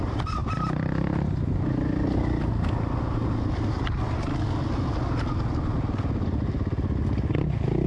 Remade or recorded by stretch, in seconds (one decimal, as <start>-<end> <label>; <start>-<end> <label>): 0.0-7.9 recorded